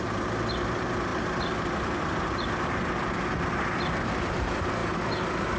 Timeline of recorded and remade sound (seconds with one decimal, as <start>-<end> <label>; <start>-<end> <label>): 0.0-5.6 recorded